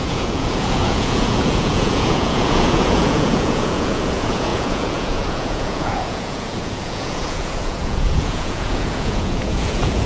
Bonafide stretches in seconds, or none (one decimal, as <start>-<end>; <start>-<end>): none